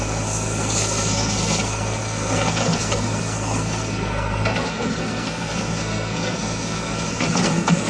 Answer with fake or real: fake